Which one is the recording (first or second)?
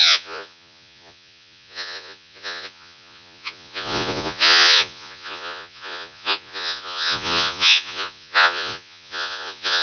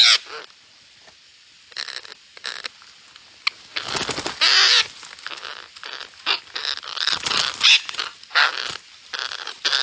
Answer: second